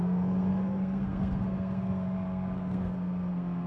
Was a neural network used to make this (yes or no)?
yes